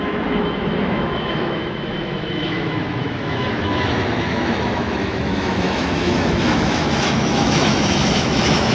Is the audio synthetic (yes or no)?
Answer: yes